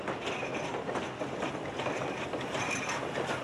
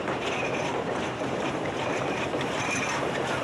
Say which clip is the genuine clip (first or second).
first